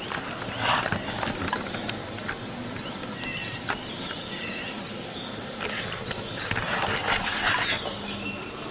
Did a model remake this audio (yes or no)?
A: no